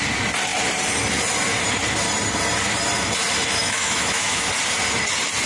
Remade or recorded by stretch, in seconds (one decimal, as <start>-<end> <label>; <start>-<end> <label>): 0.0-3.6 recorded; 3.6-4.5 remade; 4.5-5.5 recorded